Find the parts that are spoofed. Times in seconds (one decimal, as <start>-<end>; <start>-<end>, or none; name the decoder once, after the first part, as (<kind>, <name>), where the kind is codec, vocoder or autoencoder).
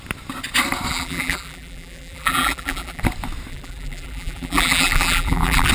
0.9-3.0 (vocoder, BigVGAN v2); 3.5-5.7